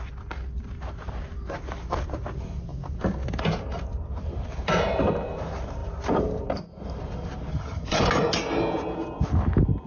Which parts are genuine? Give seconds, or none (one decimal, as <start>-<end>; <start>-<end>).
0.0-7.5; 8.0-9.9